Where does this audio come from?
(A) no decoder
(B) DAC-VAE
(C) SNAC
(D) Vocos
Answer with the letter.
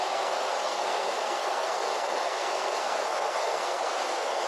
C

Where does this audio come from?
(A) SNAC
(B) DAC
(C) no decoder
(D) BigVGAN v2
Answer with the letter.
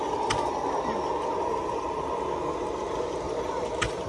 C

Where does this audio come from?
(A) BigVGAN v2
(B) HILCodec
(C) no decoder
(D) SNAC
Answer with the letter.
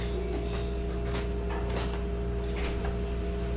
C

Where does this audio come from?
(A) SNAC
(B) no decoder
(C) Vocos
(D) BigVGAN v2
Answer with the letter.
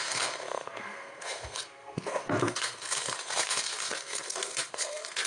A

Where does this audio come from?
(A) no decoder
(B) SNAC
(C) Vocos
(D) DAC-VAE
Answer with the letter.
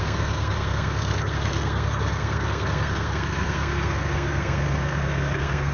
B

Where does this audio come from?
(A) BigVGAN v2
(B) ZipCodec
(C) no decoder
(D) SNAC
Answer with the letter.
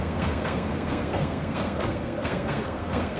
D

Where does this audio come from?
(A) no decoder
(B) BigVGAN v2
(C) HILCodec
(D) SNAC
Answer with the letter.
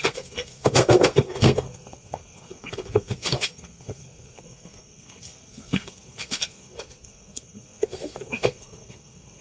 D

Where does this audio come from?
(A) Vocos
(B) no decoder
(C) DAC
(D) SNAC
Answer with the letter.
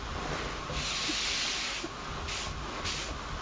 B